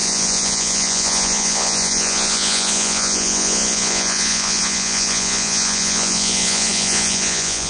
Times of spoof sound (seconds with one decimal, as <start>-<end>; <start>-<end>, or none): 0.0-7.7